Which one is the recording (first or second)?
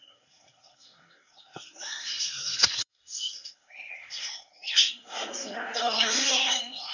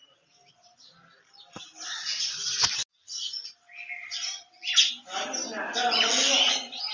second